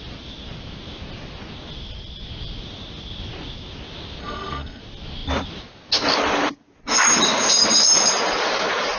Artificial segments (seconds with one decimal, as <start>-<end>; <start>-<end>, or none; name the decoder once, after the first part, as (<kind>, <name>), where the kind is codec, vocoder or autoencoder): 4.2-4.8 (codec, SNAC)